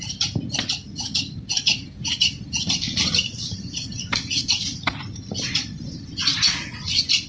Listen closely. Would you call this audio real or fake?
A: fake